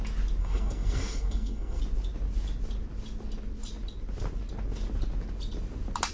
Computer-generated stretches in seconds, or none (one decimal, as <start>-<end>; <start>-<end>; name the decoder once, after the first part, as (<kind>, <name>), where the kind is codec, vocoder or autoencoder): 0.4-1.8 (codec, SNAC)